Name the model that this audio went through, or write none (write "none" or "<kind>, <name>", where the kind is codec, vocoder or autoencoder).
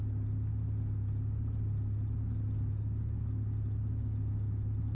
none